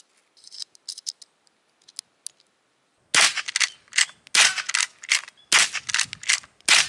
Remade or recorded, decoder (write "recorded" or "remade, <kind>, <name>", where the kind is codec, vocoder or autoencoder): recorded